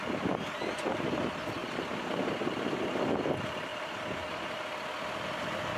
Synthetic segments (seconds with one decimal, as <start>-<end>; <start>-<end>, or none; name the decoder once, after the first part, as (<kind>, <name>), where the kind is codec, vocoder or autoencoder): none